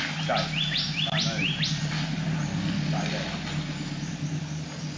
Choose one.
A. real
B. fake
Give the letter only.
A